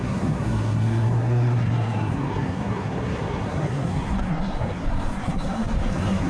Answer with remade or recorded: remade